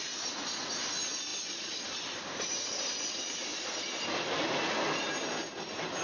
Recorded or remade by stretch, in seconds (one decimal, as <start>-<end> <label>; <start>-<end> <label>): 0.0-1.3 recorded; 1.3-4.0 remade; 4.0-6.0 recorded